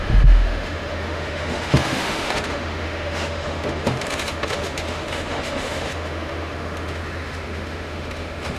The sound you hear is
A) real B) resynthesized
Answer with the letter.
B